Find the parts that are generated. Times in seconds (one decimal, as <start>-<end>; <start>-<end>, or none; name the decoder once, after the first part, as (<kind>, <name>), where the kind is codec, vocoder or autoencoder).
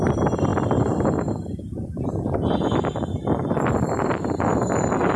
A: 0.0-5.2 (vocoder, BigVGAN v2)